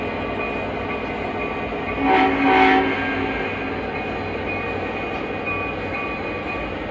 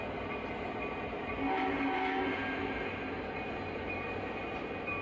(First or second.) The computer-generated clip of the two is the second